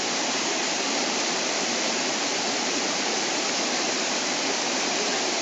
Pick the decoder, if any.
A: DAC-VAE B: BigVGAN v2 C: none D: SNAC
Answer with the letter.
B